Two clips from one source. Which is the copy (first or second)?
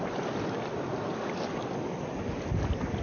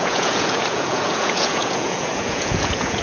second